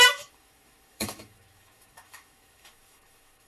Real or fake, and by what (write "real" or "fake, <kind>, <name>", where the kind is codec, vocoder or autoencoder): fake, autoencoder, DAC-VAE